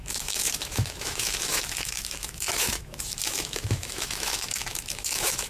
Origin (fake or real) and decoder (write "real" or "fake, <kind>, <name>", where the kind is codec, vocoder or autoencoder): fake, autoencoder, DAC-VAE